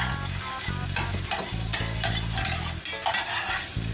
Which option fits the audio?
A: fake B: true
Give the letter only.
B